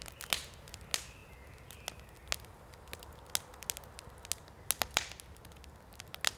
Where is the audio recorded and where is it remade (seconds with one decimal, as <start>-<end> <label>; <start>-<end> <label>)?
0.0-6.4 recorded